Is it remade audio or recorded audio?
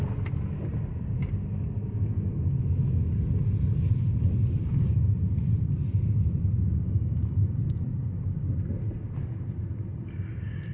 recorded